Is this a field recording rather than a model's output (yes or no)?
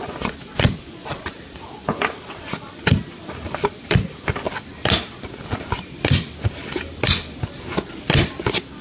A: no